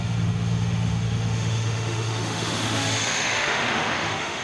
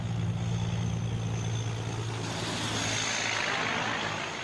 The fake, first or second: first